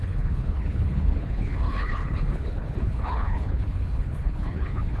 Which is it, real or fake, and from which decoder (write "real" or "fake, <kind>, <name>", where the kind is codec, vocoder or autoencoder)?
fake, codec, HILCodec